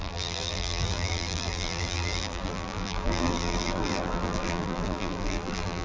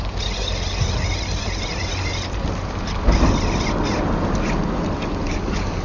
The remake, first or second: first